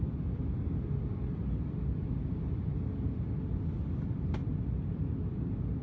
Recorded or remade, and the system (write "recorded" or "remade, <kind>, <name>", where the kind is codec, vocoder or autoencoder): recorded